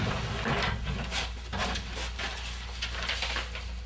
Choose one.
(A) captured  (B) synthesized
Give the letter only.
A